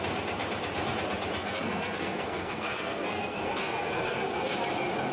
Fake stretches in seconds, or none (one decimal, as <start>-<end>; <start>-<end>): 1.4-4.5